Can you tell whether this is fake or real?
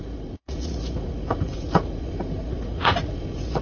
fake